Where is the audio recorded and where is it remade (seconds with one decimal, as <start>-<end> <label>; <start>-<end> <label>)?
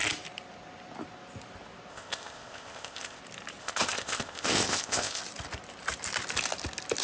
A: 0.0-1.9 recorded; 1.9-3.2 remade; 3.2-3.6 recorded; 3.6-5.2 remade; 5.2-7.0 recorded